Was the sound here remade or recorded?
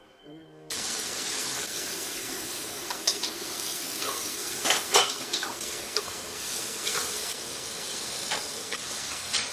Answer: remade